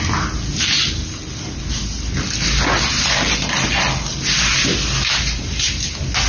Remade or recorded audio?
recorded